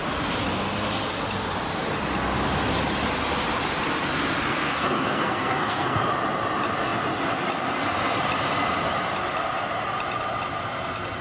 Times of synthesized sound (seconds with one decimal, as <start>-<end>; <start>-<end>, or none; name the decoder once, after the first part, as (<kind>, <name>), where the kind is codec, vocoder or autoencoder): 4.5-6.0 (codec, SNAC)